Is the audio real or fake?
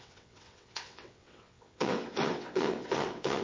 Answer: fake